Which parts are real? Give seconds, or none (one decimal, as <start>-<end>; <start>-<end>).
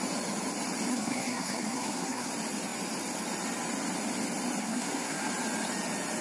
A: 0.0-0.9; 2.3-4.6; 5.3-6.2